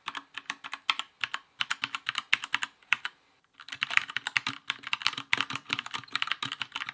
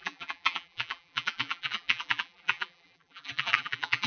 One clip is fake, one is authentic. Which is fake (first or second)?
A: second